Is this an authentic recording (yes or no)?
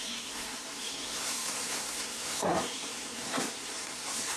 no